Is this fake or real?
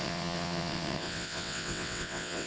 fake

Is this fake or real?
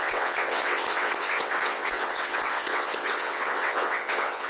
fake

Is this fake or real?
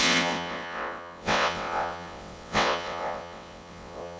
fake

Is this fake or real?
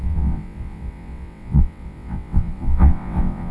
fake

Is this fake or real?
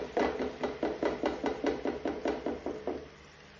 real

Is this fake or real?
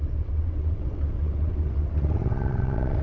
fake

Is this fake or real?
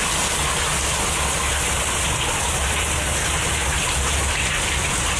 real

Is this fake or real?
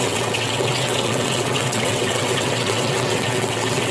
fake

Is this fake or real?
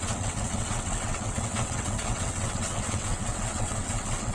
fake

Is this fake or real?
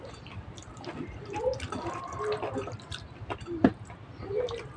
real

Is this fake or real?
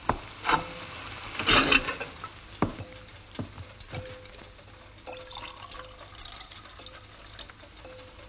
real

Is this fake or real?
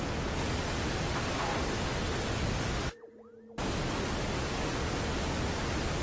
real